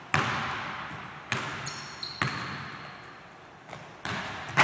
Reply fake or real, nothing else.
real